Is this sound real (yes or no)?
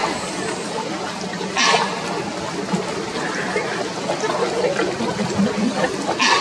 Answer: yes